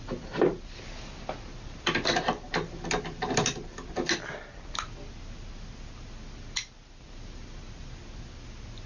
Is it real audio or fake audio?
real